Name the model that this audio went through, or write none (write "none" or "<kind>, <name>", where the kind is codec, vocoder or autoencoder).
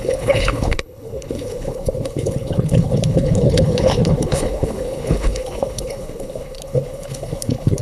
codec, HILCodec